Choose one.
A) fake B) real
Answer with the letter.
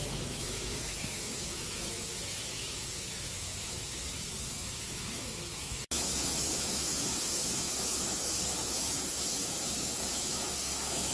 A